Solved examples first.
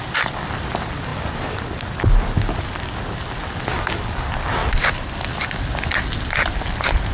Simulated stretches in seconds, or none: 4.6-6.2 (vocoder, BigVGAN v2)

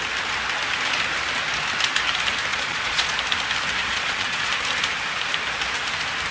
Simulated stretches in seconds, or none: 2.5-3.1 (vocoder, Vocos); 3.8-4.5

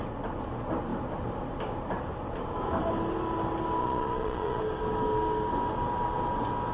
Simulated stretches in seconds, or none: 3.8-4.6 (vocoder, Vocos)